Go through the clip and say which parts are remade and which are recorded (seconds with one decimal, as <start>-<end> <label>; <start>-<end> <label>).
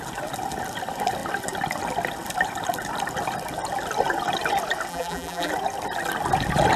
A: 0.0-4.9 recorded; 4.9-5.5 remade; 5.5-6.8 recorded